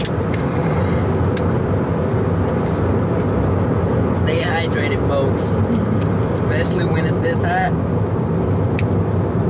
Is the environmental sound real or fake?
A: real